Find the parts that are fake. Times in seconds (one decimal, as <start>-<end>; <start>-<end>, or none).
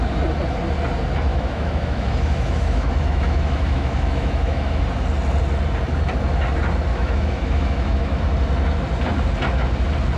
1.3-4.8; 6.9-8.2